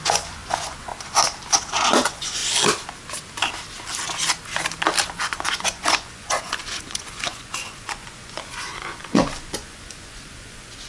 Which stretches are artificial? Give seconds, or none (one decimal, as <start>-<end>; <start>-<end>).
0.0-0.9; 1.9-2.4; 5.1-10.9